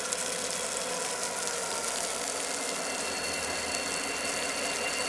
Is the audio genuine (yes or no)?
yes